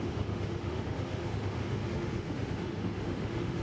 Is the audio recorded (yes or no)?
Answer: no